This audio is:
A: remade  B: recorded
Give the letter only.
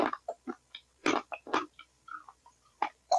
A